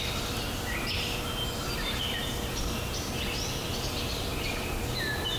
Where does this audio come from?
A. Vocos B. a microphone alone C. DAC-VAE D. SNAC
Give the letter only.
B